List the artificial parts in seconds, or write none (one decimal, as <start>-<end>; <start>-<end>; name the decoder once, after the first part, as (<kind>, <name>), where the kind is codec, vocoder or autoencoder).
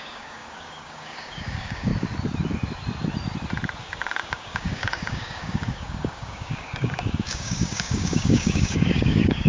0.0-1.9 (codec, DAC); 3.8-9.5